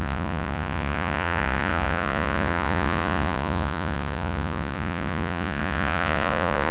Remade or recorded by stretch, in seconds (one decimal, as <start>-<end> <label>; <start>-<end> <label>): 0.0-6.7 remade